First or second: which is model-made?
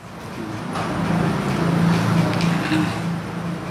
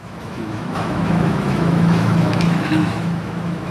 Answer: second